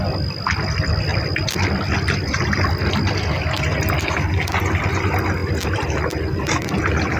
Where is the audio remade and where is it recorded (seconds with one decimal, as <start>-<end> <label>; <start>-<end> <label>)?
0.0-7.2 recorded